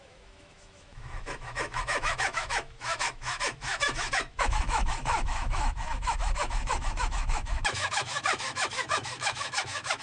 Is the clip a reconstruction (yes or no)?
yes